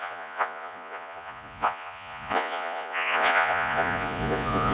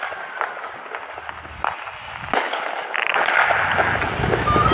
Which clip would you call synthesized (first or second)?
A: first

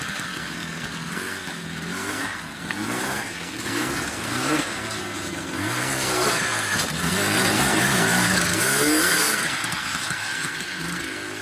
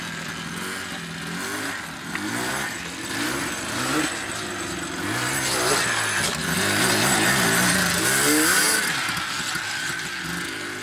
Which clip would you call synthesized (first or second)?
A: first